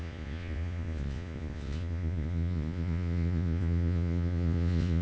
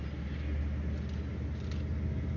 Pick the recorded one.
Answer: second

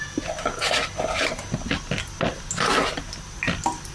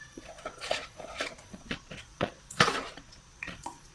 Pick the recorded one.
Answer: first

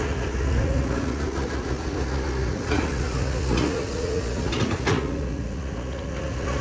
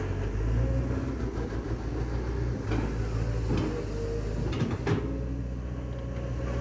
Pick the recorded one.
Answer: second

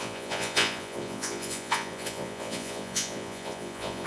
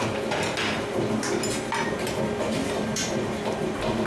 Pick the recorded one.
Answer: second